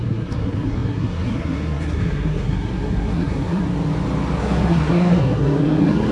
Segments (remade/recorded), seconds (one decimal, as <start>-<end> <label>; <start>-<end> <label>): 0.0-3.6 remade; 3.6-4.4 recorded; 4.4-6.1 remade